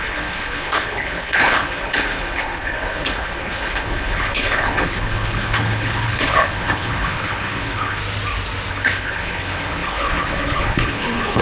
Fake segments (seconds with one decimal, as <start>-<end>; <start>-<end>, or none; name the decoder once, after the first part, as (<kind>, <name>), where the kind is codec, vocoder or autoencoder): 0.0-8.0 (codec, HILCodec); 8.7-11.4